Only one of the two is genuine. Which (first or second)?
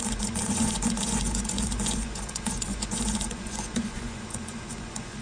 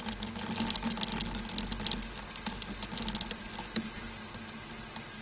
second